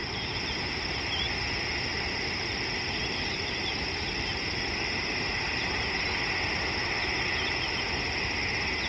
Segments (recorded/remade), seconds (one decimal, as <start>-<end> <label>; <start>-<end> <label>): 0.0-1.2 remade; 1.2-1.9 recorded; 1.9-4.6 remade; 4.6-8.9 recorded